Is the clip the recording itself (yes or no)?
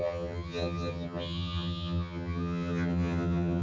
no